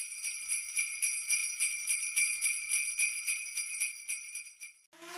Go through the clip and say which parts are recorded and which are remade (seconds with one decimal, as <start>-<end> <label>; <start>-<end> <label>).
0.0-5.2 recorded